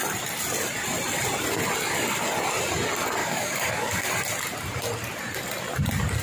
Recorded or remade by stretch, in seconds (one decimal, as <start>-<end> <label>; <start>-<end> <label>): 0.0-3.2 recorded; 3.2-4.1 remade; 4.1-6.2 recorded